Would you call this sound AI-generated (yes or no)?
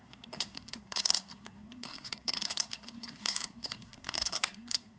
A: yes